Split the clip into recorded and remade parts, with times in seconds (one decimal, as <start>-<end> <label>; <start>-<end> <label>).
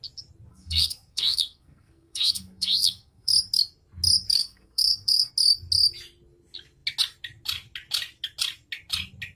0.0-0.5 recorded; 0.5-3.3 remade; 3.3-4.4 recorded; 4.4-5.3 remade; 5.3-9.4 recorded